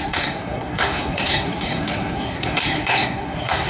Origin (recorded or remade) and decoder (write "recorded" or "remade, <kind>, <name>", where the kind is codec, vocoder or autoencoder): remade, codec, SNAC